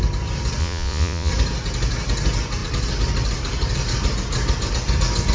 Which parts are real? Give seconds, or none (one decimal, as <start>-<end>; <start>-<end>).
0.0-0.6; 1.3-5.3